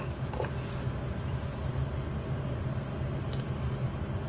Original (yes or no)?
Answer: yes